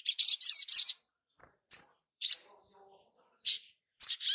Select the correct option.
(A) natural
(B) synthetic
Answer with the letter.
B